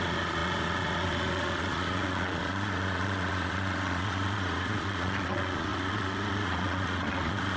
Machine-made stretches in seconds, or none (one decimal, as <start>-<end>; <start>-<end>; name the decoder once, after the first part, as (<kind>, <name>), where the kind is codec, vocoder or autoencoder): 0.0-7.6 (vocoder, Vocos)